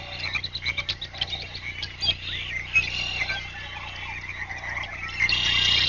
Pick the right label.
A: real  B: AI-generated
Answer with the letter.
A